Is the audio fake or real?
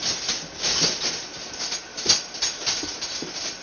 real